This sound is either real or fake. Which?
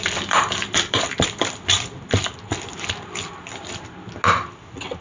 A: real